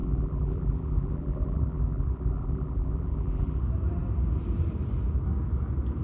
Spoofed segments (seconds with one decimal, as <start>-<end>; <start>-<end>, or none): 0.0-3.6